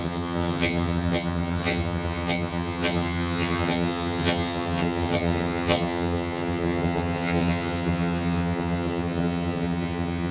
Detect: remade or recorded remade